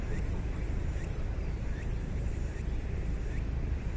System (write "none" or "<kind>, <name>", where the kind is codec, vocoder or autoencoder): vocoder, BigVGAN v2